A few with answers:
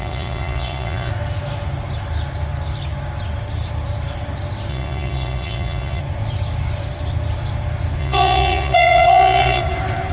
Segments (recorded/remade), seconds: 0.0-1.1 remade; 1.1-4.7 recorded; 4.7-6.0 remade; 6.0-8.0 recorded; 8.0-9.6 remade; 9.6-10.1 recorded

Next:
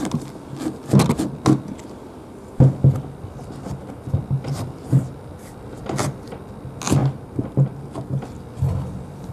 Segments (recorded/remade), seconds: 0.0-4.2 recorded; 4.2-6.4 remade; 6.4-9.3 recorded

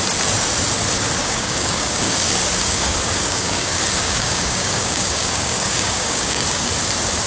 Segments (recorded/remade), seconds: 0.0-1.2 recorded; 1.2-2.2 remade; 2.2-2.6 recorded; 2.6-6.7 remade; 6.7-7.3 recorded